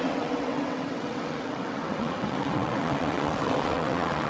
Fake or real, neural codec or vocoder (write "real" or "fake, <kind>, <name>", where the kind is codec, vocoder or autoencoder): fake, vocoder, WaveNeXt